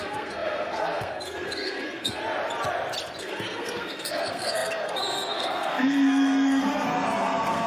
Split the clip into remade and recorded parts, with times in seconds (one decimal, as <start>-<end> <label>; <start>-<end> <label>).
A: 0.0-2.2 remade; 2.2-3.2 recorded; 3.2-7.7 remade